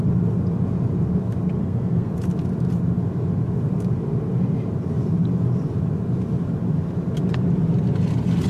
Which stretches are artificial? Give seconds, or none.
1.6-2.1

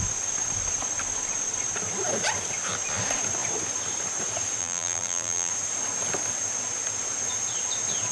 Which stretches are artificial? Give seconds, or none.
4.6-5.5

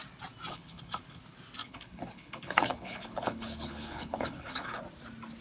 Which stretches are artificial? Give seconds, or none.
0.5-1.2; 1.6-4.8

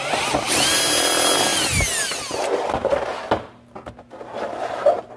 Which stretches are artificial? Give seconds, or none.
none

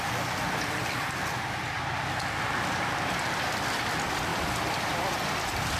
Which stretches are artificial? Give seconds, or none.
none